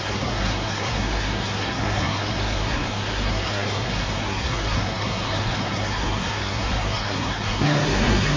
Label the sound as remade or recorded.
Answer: remade